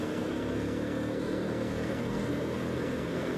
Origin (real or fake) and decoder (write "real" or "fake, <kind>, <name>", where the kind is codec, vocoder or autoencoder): fake, codec, SNAC